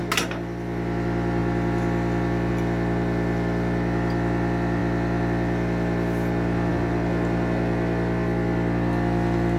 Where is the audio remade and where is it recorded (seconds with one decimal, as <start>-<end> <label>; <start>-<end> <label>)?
0.0-9.6 recorded